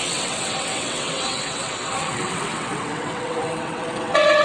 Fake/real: fake